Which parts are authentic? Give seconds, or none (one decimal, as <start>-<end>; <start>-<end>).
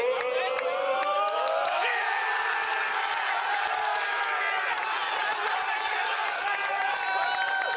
0.0-0.9; 2.3-3.9; 4.4-7.8